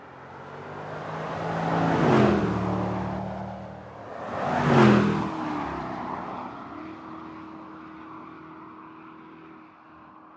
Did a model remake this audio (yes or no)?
no